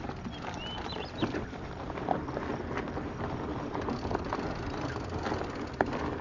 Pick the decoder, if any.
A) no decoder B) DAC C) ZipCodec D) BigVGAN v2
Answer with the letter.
A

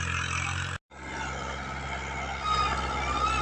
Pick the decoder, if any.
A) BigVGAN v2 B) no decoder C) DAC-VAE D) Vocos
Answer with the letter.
B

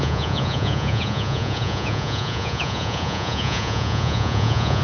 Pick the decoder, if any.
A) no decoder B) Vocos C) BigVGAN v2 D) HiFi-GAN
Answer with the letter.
B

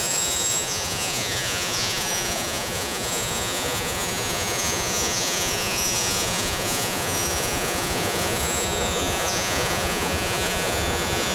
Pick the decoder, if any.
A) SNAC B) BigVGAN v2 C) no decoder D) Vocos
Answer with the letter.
D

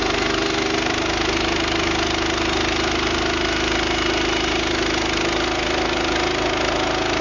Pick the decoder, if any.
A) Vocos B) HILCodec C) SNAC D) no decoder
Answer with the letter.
D